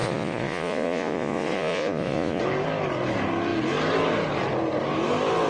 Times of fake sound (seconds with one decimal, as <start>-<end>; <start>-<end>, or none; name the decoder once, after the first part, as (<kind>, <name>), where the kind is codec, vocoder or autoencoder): 0.0-2.4 (vocoder, Vocos)